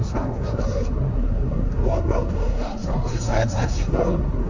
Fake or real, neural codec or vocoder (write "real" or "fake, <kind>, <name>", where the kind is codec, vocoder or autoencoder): fake, codec, SNAC